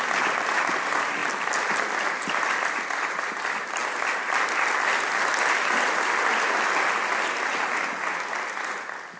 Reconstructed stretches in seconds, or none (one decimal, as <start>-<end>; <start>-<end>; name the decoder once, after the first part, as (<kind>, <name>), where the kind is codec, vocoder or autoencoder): none